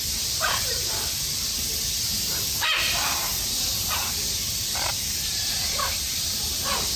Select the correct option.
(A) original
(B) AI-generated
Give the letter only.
B